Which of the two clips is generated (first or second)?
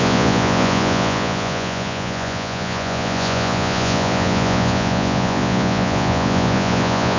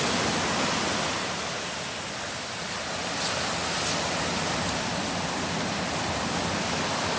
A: first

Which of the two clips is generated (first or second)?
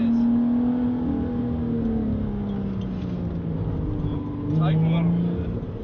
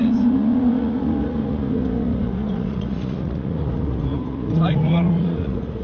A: second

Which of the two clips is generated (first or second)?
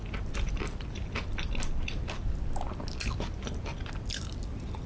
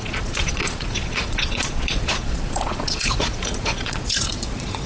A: second